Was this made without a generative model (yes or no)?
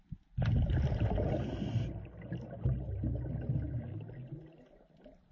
yes